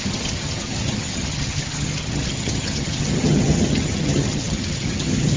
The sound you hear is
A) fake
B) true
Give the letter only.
A